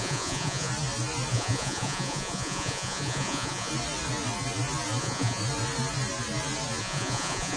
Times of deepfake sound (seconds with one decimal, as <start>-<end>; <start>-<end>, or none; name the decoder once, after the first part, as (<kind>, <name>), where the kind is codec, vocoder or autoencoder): 0.0-0.7 (vocoder, Vocos); 1.3-3.7; 5.0-5.4; 6.8-7.6